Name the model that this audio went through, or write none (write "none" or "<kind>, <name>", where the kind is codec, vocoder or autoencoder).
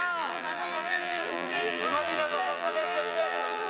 vocoder, BigVGAN v2